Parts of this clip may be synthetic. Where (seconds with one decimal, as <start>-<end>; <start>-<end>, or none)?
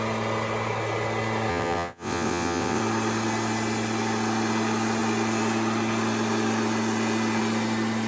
1.5-2.8